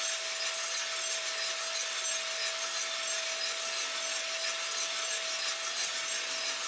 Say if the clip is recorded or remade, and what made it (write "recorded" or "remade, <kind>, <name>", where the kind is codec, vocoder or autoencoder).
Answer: recorded